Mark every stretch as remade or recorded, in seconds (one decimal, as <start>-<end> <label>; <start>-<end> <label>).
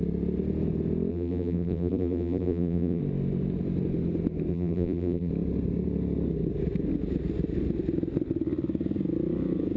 0.0-1.1 recorded; 1.1-3.0 remade; 3.0-4.5 recorded; 4.5-5.3 remade; 5.3-9.8 recorded